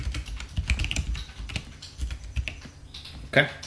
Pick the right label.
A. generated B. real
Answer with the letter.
B